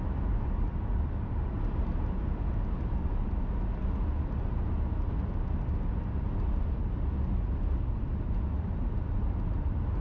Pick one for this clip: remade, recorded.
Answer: recorded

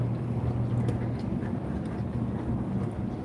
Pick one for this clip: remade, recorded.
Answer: recorded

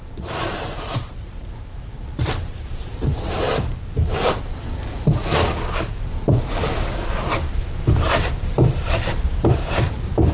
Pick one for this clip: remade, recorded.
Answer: remade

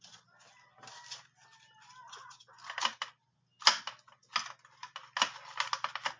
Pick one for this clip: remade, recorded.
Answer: recorded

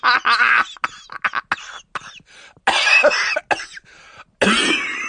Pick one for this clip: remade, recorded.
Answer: recorded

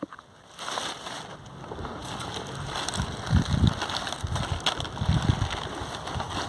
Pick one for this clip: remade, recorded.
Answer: recorded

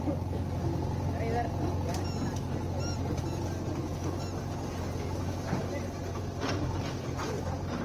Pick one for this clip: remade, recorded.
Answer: recorded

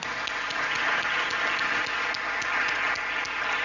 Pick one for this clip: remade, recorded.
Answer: recorded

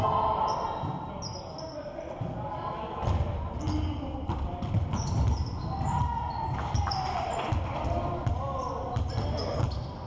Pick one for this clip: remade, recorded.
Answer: recorded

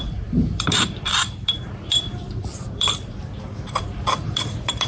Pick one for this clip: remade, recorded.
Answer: remade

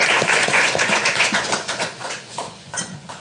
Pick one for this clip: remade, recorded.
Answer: remade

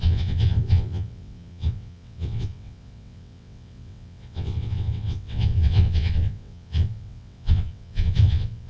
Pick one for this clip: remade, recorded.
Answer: remade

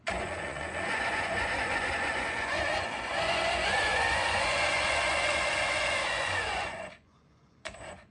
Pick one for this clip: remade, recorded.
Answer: remade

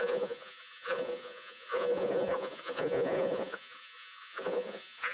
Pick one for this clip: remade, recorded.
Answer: remade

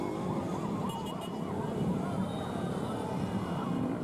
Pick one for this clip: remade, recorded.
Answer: recorded